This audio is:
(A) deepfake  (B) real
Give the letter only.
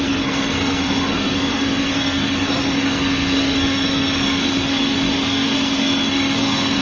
A